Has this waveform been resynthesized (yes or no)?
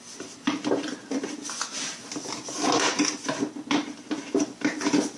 no